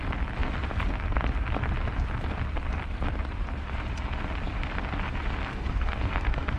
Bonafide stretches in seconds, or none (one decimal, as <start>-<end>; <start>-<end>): 0.0-5.5